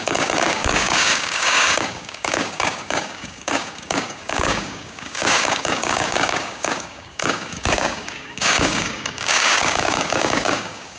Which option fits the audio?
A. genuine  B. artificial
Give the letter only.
B